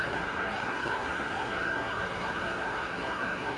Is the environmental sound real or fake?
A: fake